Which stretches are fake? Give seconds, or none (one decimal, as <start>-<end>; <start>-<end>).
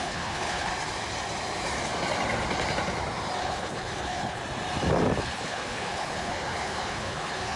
0.0-0.7; 3.4-4.4; 5.2-7.6